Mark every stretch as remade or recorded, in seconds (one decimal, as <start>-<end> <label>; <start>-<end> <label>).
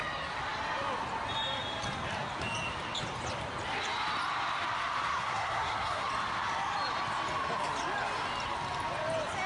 0.0-5.1 recorded; 5.1-6.1 remade; 6.1-9.5 recorded